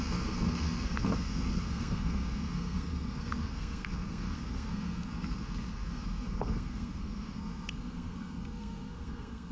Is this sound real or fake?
fake